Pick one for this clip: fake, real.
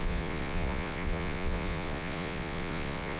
fake